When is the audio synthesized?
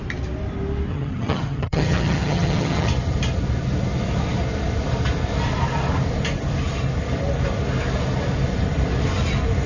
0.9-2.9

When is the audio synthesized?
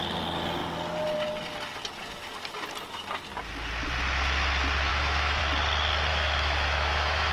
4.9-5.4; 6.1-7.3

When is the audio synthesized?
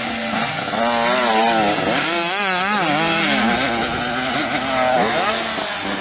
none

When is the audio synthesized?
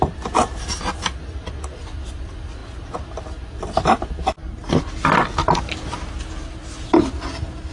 none